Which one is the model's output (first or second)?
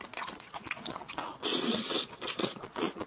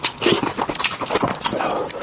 first